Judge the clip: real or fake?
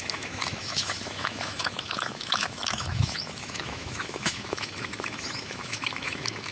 fake